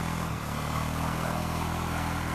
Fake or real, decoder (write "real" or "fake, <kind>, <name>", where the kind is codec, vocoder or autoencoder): fake, codec, SNAC